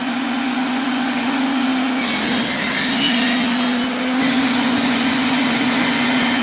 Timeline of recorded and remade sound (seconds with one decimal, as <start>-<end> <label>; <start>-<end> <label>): 0.0-1.7 remade; 1.7-4.2 recorded; 4.2-6.4 remade